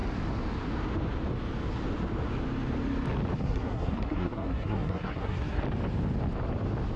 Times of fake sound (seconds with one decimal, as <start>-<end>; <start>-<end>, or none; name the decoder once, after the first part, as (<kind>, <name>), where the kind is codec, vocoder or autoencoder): 3.4-5.6 (codec, SNAC)